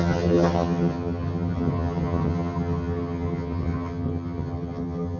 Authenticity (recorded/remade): remade